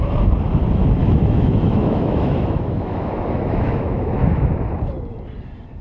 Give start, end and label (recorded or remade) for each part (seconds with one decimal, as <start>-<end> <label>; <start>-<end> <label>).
0.0-1.0 recorded; 1.0-4.5 remade; 4.5-5.8 recorded